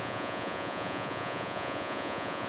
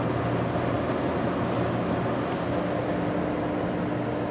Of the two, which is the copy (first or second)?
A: first